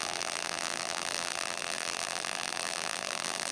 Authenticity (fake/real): fake